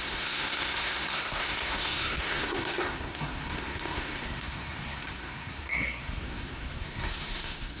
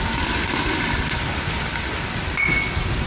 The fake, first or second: first